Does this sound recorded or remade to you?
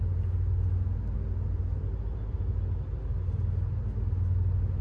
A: recorded